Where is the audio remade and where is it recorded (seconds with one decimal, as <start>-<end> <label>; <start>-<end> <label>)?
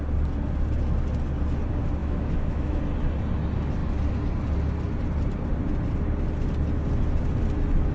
0.0-2.0 recorded; 2.0-2.8 remade; 2.8-7.9 recorded